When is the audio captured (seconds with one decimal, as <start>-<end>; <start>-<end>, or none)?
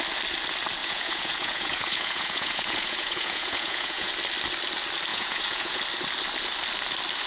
0.0-0.8; 4.1-5.1; 5.8-7.3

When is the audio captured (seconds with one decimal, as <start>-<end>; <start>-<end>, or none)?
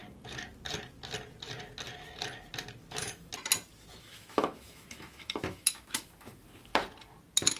0.0-2.9; 3.3-4.0; 6.7-7.6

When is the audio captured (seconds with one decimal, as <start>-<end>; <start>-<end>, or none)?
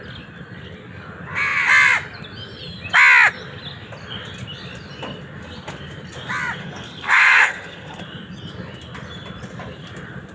0.0-6.6; 8.0-10.3